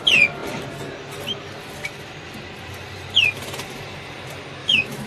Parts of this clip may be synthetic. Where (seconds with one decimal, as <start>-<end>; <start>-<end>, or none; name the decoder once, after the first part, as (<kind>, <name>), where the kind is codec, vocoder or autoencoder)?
4.6-5.1 (autoencoder, DAC-VAE)